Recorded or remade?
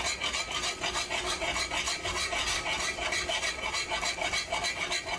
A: recorded